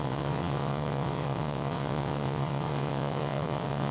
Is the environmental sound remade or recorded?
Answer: remade